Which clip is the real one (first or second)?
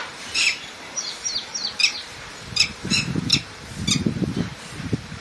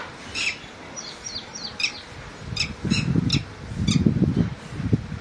second